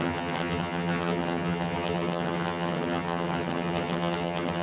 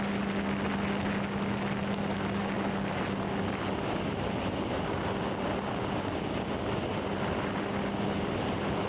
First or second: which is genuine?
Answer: second